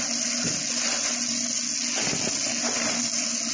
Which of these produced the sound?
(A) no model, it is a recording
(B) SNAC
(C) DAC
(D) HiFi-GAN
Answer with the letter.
A